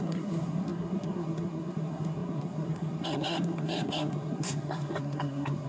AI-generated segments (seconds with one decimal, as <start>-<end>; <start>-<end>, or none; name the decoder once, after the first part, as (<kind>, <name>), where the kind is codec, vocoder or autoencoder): 0.0-5.7 (codec, SNAC)